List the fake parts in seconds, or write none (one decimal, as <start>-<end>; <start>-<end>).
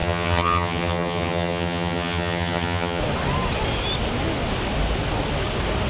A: 0.0-3.0